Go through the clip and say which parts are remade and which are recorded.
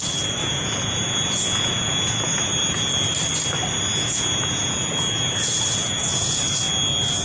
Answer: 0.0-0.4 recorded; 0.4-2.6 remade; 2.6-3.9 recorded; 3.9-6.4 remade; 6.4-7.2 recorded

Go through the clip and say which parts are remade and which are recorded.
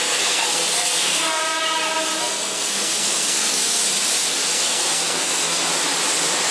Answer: 0.0-1.4 remade; 1.4-2.2 recorded; 2.2-3.8 remade; 3.8-4.5 recorded; 4.5-5.7 remade; 5.7-6.5 recorded